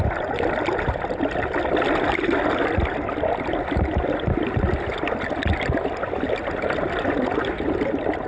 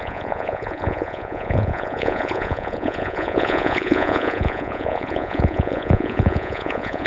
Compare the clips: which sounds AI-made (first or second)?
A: second